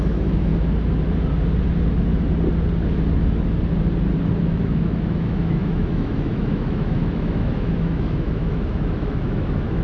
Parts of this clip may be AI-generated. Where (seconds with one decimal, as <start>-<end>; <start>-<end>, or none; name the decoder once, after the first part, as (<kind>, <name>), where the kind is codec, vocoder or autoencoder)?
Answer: 0.0-0.5 (autoencoder, DAC-VAE); 4.4-9.8